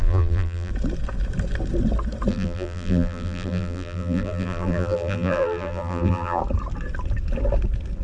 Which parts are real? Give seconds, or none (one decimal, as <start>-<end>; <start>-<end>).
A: 0.7-2.3; 6.4-8.0